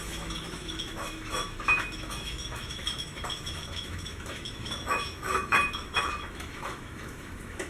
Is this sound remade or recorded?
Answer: remade